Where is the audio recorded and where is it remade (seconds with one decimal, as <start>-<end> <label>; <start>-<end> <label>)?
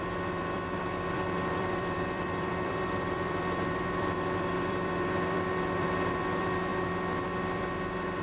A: 0.0-6.7 remade; 6.7-7.2 recorded; 7.2-8.2 remade